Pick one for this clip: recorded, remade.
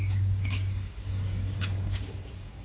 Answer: remade